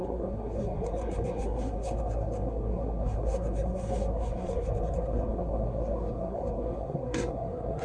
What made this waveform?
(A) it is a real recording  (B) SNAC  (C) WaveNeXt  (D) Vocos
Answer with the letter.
B